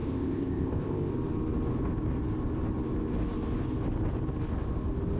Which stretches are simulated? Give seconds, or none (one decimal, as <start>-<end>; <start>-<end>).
0.0-1.1